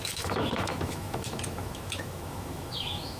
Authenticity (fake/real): fake